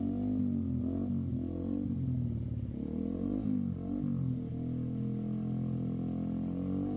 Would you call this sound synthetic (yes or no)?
no